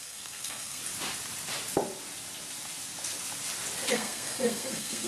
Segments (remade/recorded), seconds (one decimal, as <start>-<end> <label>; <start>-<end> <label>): 0.0-0.8 remade; 0.8-3.9 recorded; 3.9-5.1 remade